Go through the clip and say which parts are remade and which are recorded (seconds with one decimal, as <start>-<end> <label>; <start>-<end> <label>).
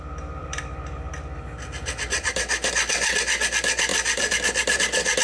0.0-0.4 recorded; 0.4-1.1 remade; 1.1-1.8 recorded; 1.8-2.9 remade; 2.9-3.9 recorded; 3.9-4.8 remade; 4.8-5.2 recorded